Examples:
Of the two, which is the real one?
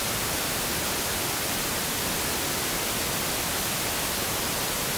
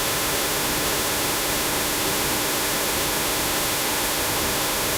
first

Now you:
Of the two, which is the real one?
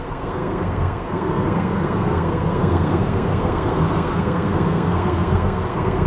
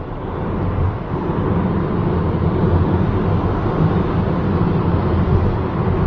second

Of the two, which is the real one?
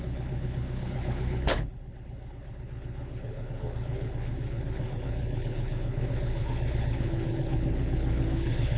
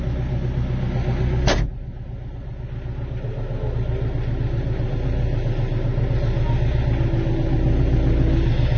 second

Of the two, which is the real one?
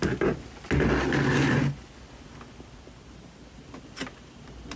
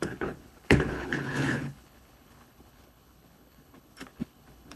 first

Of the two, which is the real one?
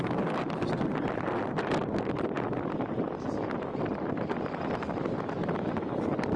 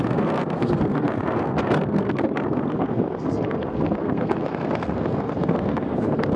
first